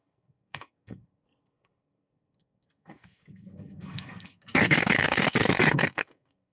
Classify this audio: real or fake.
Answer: fake